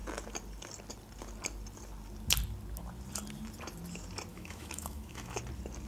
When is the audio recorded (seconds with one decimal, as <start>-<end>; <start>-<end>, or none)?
0.0-4.3; 5.4-5.9